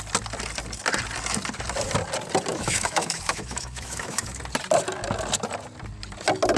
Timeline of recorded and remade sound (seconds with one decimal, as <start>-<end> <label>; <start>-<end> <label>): 0.0-2.5 recorded; 2.5-4.4 remade; 4.4-6.6 recorded